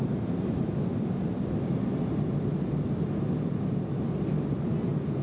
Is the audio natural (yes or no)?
yes